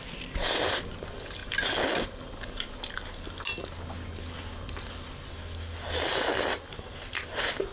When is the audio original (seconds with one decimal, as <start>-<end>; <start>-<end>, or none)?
0.0-7.7